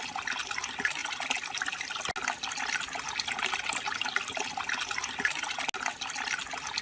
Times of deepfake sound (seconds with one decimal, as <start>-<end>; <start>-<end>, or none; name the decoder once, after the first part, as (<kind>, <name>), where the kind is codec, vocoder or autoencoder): none